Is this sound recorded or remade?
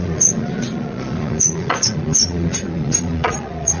remade